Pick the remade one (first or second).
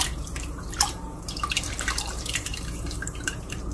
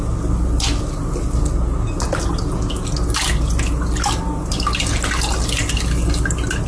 first